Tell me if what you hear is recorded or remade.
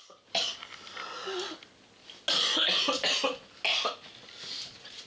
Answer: recorded